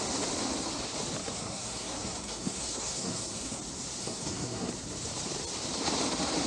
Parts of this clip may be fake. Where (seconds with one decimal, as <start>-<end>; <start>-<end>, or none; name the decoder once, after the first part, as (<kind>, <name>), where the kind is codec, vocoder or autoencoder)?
1.2-3.6 (codec, SNAC); 4.0-4.7

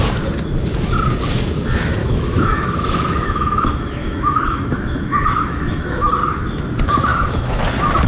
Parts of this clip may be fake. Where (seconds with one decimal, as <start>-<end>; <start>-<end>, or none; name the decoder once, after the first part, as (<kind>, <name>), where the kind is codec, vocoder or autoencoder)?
2.0-6.1 (autoencoder, DAC-VAE); 7.1-7.6

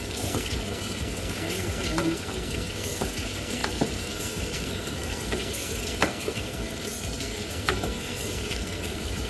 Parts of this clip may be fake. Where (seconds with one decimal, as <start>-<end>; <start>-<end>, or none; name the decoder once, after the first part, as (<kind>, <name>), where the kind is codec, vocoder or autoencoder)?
0.0-9.3 (codec, SNAC)

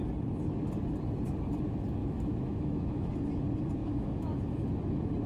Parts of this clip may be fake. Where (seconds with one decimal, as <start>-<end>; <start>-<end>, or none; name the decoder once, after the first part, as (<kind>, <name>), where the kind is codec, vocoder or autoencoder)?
2.0-3.1 (autoencoder, DAC-VAE); 3.8-4.4

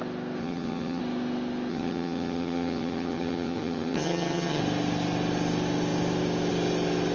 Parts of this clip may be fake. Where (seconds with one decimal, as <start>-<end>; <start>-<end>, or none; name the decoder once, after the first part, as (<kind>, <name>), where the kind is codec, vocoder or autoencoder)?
0.4-1.0 (vocoder, HiFi-GAN); 1.7-4.6

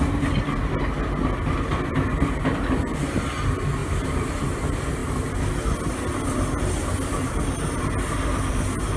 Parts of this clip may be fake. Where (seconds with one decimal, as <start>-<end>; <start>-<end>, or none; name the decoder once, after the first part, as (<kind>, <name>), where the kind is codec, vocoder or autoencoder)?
2.5-3.2 (vocoder, BigVGAN v2); 3.8-4.6

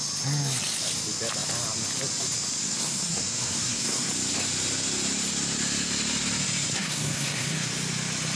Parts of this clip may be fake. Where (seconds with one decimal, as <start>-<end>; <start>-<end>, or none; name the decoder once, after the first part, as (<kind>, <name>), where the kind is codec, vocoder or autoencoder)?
2.6-4.1 (codec, SNAC); 6.7-7.7

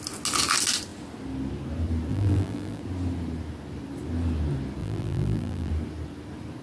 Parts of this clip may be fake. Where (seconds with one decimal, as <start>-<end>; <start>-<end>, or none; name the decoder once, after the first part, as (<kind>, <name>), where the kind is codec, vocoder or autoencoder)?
2.1-2.8 (vocoder, BigVGAN v2); 4.8-5.7